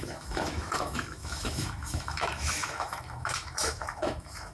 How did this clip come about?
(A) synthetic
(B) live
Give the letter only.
A